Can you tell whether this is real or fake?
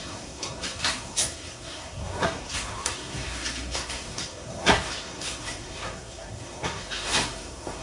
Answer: fake